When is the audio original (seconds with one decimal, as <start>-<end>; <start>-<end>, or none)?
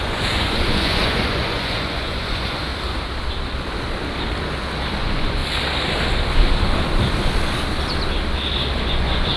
2.7-5.0; 5.4-8.8